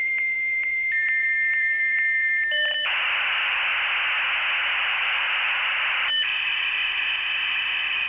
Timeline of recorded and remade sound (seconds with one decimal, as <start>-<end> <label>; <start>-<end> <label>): 0.0-3.7 remade; 3.7-4.7 recorded; 4.7-6.8 remade; 6.8-8.1 recorded